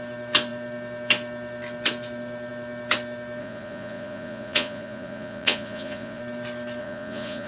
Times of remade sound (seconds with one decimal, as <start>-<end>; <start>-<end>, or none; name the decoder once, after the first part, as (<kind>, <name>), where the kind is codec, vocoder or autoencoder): 3.4-6.2 (vocoder, Vocos); 6.8-7.5